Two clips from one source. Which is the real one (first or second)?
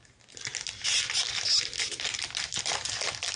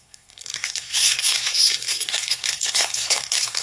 first